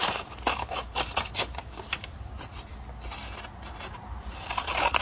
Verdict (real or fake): real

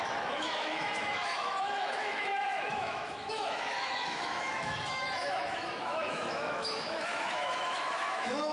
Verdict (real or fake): fake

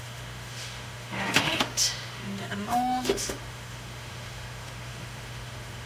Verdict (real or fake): fake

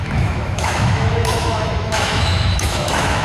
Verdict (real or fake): fake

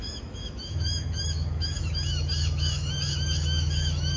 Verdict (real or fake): fake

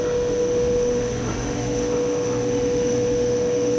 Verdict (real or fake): fake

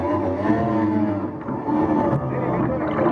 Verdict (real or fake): real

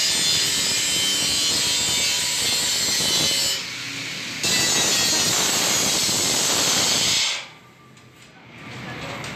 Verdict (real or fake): real